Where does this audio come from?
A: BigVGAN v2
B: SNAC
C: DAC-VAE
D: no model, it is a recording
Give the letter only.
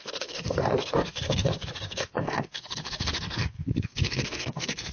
B